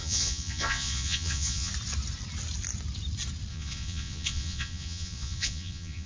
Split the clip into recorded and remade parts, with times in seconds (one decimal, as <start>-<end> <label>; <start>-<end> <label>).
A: 0.0-1.7 remade; 1.7-3.5 recorded; 3.5-6.1 remade